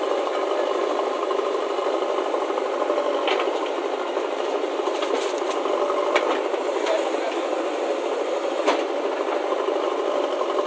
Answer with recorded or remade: recorded